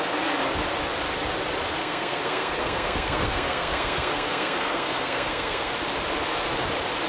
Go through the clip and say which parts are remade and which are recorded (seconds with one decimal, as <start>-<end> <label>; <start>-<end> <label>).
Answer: 0.0-1.8 recorded; 1.8-5.7 remade; 5.7-7.1 recorded